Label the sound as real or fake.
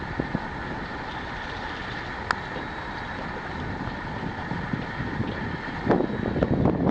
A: real